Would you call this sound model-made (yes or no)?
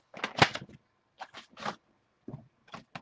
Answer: no